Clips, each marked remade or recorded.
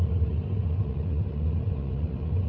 remade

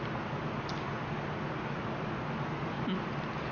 recorded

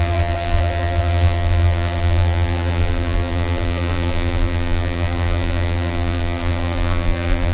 remade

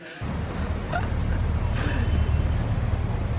recorded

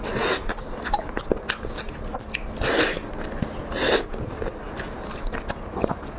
recorded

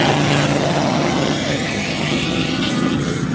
remade